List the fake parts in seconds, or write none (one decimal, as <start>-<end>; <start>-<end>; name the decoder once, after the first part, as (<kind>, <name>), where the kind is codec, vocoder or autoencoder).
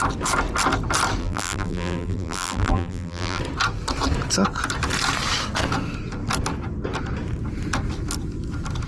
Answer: 1.2-3.4 (vocoder, BigVGAN v2)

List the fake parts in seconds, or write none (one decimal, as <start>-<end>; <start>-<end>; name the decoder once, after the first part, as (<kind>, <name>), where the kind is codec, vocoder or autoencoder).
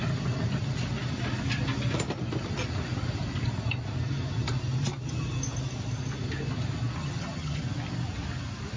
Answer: 7.0-7.6 (vocoder, HiFi-GAN)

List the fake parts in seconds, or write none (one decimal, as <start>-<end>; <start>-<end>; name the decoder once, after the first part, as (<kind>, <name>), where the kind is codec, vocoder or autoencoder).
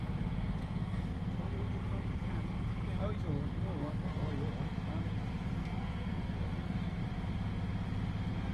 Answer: 0.6-1.5 (codec, SNAC); 3.8-4.3; 5.6-7.0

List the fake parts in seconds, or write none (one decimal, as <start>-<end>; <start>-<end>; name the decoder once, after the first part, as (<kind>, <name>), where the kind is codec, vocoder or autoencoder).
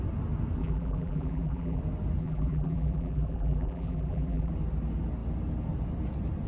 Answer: 0.6-1.8 (vocoder, BigVGAN v2); 2.2-4.5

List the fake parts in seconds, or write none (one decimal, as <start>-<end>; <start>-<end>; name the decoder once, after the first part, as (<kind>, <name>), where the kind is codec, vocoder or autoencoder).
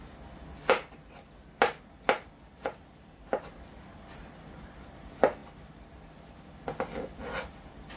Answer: none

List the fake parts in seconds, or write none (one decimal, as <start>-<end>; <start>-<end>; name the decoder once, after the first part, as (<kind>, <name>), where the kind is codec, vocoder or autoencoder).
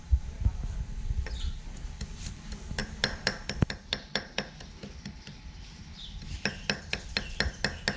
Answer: 2.8-3.7 (vocoder, BigVGAN v2)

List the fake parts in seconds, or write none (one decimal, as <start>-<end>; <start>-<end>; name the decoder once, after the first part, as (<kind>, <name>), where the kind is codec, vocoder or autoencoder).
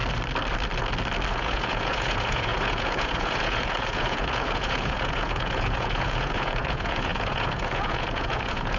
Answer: 1.3-8.8 (vocoder, Vocos)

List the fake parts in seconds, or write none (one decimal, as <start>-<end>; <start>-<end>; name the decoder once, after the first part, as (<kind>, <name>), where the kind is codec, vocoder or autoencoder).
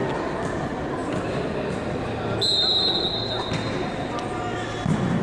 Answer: none